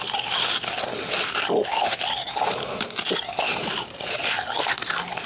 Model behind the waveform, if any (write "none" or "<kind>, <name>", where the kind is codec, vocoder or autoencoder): none